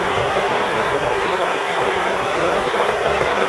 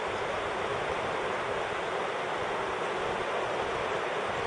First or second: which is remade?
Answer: first